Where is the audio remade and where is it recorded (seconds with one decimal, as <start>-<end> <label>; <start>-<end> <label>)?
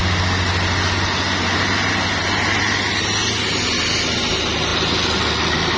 0.0-5.8 recorded